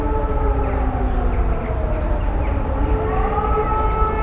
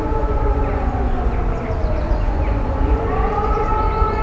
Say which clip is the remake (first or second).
second